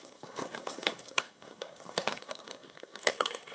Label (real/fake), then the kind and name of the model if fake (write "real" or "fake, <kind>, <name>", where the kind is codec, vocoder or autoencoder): fake, codec, SNAC